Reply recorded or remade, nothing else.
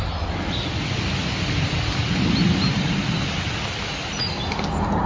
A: recorded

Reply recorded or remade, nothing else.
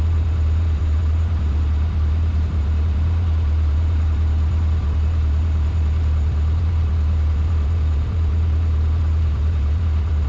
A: remade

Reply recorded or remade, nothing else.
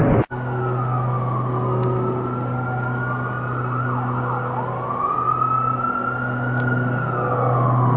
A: recorded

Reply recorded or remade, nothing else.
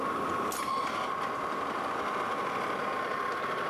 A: recorded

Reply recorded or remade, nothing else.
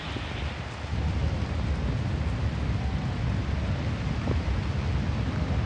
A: recorded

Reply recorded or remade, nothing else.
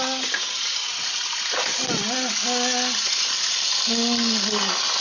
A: recorded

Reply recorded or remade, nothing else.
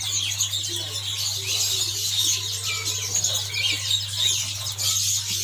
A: recorded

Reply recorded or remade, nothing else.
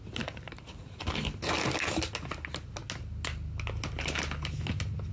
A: recorded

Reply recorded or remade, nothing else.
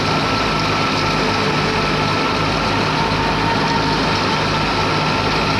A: recorded